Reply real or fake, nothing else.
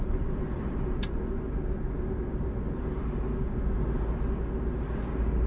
real